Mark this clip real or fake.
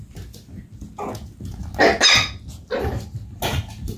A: real